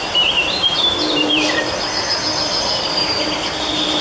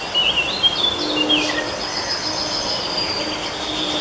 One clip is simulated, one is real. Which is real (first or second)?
second